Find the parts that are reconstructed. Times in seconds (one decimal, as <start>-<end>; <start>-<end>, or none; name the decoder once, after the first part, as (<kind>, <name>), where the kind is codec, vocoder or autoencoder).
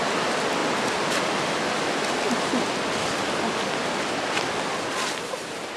none